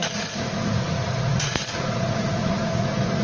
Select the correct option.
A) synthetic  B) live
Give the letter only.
A